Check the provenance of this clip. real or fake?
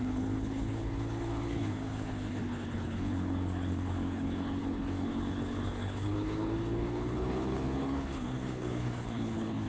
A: fake